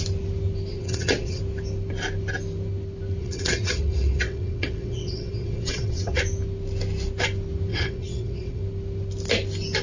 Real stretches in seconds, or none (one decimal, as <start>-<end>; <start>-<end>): 0.0-0.7; 1.4-3.2; 6.2-7.7; 8.6-9.8